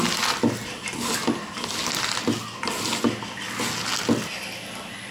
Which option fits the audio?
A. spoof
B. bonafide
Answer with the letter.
B